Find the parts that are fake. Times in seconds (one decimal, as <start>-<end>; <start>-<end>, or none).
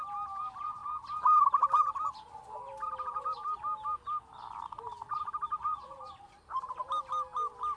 none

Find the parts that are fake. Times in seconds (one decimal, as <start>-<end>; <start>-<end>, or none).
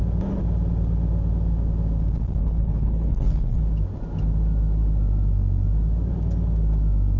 2.4-3.6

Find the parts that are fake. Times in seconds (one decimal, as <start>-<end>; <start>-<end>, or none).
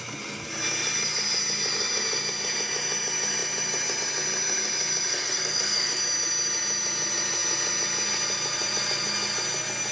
5.1-6.0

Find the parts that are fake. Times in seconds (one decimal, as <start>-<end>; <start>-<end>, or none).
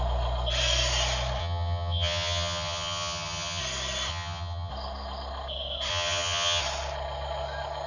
1.4-3.6; 4.1-4.7; 5.9-6.6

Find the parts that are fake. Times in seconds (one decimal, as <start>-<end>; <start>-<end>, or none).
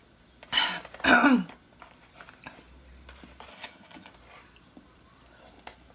3.5-4.1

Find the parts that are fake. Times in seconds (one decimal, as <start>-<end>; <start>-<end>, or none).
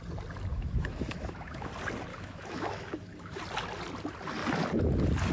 0.5-1.7; 2.1-3.4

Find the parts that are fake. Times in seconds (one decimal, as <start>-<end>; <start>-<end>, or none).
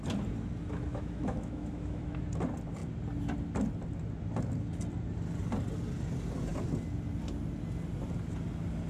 0.9-2.2